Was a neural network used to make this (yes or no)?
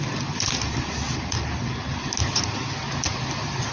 no